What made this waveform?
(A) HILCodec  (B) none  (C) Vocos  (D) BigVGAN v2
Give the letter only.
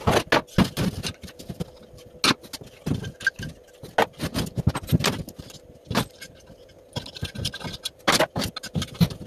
B